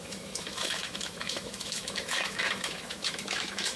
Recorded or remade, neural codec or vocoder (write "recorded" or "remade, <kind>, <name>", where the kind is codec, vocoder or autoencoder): remade, autoencoder, DAC-VAE